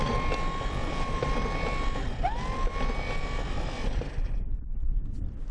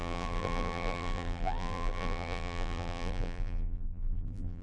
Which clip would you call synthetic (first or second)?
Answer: second